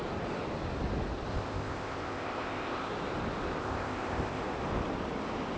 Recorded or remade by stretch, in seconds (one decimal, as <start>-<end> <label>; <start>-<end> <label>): 0.0-1.3 recorded; 1.3-2.9 remade; 2.9-3.6 recorded; 3.6-4.4 remade; 4.4-5.6 recorded